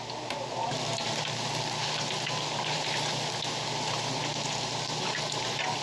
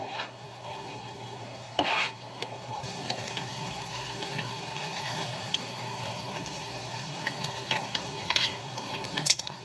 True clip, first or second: first